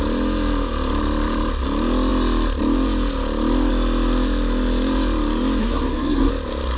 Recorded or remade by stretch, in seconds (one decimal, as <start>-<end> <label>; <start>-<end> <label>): 0.0-5.6 recorded; 5.6-6.3 remade; 6.3-6.8 recorded